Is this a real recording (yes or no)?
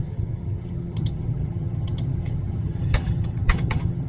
no